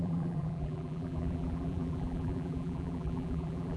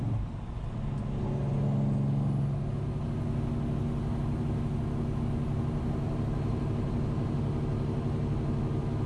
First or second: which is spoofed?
first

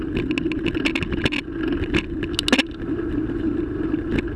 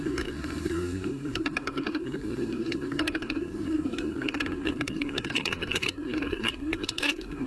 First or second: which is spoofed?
second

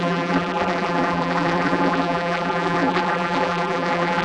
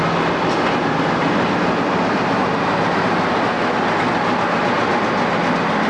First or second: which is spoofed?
first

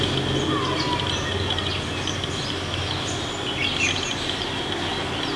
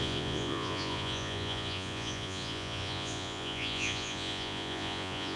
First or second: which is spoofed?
second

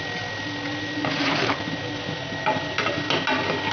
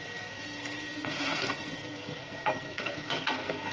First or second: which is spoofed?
second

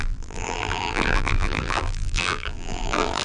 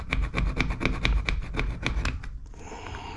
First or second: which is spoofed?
first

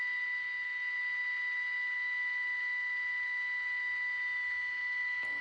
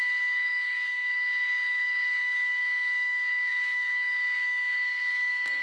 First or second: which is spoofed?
second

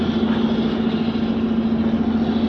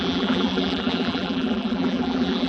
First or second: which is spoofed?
second